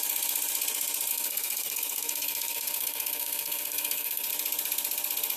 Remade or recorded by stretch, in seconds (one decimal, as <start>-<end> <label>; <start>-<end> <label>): 0.0-1.1 recorded; 1.1-4.3 remade; 4.3-5.4 recorded